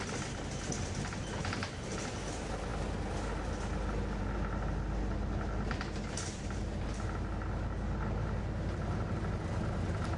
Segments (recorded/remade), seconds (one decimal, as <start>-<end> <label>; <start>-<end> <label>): 0.0-10.2 recorded